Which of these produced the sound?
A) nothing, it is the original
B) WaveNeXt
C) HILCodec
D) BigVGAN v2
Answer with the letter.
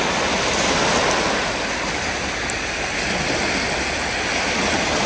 A